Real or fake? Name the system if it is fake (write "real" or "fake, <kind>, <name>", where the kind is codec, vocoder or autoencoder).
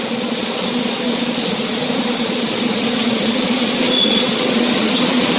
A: fake, vocoder, Vocos